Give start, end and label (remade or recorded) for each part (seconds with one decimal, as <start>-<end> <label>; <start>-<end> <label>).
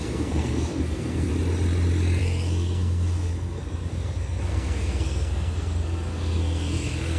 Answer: 0.0-1.3 remade; 1.3-2.2 recorded; 2.2-7.2 remade